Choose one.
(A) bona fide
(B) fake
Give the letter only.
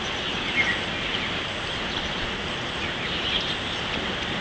A